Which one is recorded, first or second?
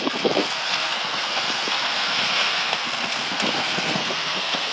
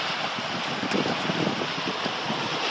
second